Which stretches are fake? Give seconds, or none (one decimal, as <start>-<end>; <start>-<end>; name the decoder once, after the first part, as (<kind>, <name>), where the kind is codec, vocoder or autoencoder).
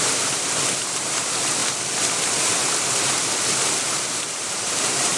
0.0-1.6 (vocoder, BigVGAN v2); 3.8-5.2